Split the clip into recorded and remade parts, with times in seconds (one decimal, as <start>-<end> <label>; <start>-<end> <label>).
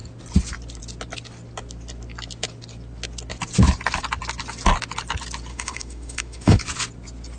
0.0-5.5 recorded; 5.5-6.6 remade; 6.6-7.4 recorded